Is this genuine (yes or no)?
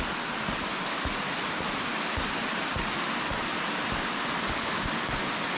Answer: yes